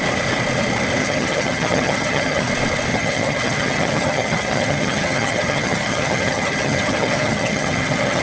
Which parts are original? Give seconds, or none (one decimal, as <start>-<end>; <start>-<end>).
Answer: 0.0-1.0; 2.5-2.9